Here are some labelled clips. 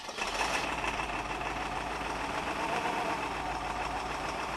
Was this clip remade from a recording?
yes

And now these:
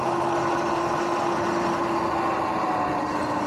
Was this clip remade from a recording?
no